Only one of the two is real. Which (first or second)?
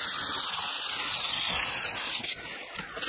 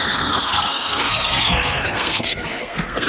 first